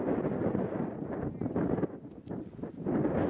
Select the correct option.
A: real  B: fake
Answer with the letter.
A